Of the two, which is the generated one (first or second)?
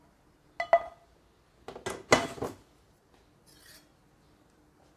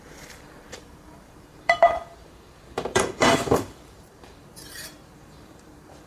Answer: second